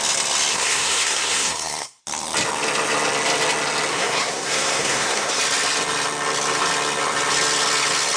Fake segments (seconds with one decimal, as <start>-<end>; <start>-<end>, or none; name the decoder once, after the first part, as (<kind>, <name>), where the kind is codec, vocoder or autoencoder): 0.5-2.0 (codec, SNAC); 3.9-5.4